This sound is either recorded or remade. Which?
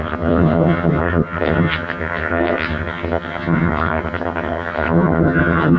remade